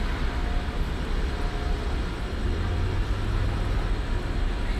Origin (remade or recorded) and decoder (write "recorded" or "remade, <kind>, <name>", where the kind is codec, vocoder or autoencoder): recorded